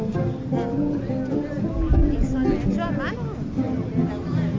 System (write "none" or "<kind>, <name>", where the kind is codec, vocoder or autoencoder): none